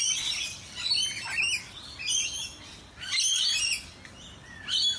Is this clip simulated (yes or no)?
no